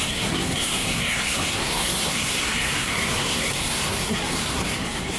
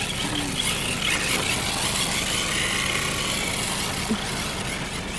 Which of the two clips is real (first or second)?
second